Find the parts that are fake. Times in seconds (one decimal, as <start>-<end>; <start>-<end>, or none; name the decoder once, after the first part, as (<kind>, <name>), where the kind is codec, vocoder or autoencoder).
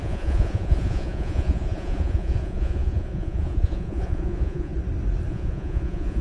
0.0-4.7 (vocoder, Vocos); 5.3-6.2